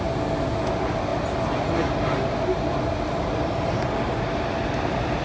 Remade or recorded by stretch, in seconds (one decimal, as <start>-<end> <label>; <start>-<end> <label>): 0.0-5.2 recorded